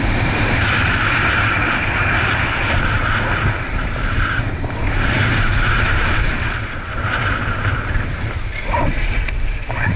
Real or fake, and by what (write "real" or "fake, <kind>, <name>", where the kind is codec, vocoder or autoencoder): fake, vocoder, BigVGAN v2